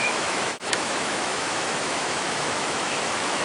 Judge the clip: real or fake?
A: fake